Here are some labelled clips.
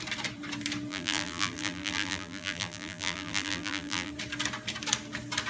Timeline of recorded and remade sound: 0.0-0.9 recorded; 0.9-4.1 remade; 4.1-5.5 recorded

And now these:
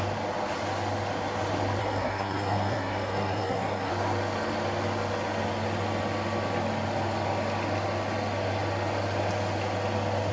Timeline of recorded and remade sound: 0.0-1.8 recorded; 1.8-3.9 remade; 3.9-10.3 recorded

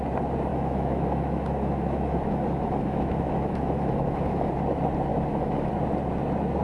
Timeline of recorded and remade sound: 0.0-0.5 recorded; 0.5-4.5 remade; 4.5-5.1 recorded; 5.1-5.7 remade; 5.7-6.6 recorded

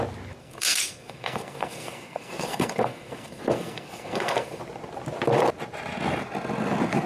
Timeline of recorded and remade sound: 0.0-0.4 recorded; 0.4-4.6 remade; 4.6-7.1 recorded

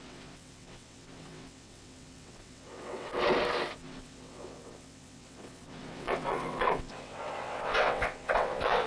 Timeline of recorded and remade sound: 0.0-3.1 remade; 3.1-3.7 recorded; 3.7-8.9 remade

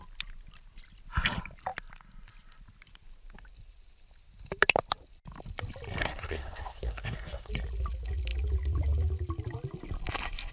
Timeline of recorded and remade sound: 0.0-6.0 recorded; 6.0-7.5 remade; 7.5-10.5 recorded

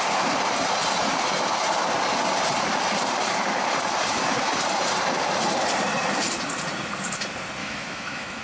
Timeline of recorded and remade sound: 0.0-7.6 recorded; 7.6-8.4 remade

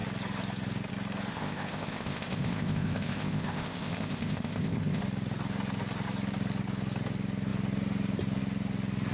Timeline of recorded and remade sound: 0.0-1.3 recorded; 1.3-5.0 remade; 5.0-9.1 recorded